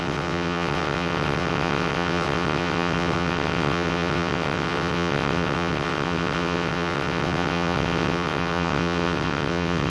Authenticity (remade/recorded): remade